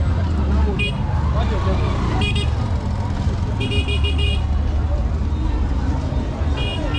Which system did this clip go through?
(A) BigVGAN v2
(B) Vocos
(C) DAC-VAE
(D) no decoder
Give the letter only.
D